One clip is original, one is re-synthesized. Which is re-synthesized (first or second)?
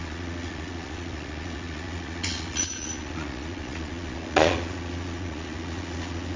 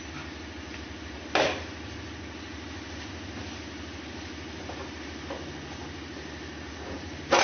first